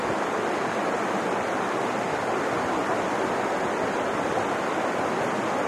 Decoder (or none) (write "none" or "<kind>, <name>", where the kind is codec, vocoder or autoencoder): none